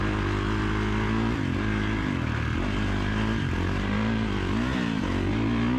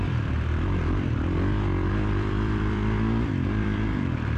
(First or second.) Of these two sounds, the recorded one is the first